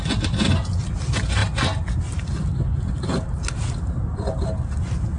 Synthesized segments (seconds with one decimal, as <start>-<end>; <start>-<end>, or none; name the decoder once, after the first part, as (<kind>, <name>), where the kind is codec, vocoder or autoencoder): none